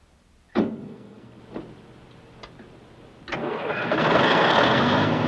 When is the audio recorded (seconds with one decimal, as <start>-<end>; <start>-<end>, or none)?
0.0-0.5; 1.4-3.4